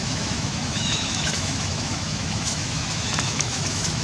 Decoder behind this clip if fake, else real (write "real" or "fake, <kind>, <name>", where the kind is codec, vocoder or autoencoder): fake, autoencoder, DAC-VAE